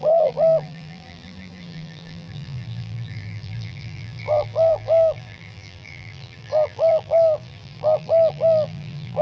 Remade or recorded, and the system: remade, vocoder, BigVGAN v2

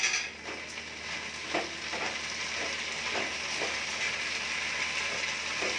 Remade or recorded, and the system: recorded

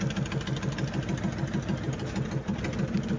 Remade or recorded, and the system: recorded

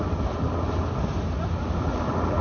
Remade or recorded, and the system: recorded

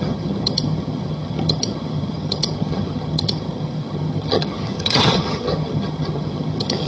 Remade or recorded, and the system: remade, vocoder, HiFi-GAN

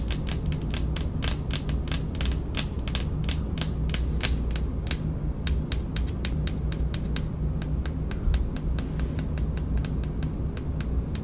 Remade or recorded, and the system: recorded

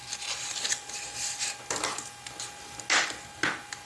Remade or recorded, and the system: recorded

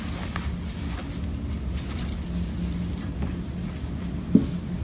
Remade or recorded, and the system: recorded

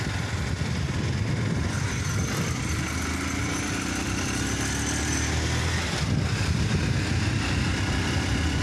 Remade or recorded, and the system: recorded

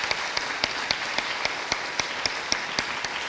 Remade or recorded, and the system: recorded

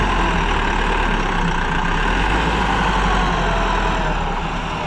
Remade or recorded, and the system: recorded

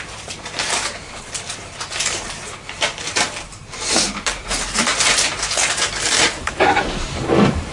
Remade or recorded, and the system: remade, vocoder, BigVGAN v2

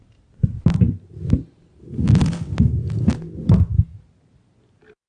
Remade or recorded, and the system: recorded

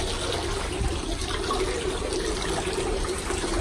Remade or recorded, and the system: recorded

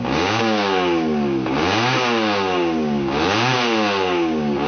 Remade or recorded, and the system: remade, codec, DAC